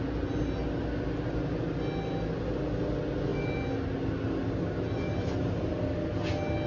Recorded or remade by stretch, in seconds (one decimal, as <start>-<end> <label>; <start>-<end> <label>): 0.0-6.7 recorded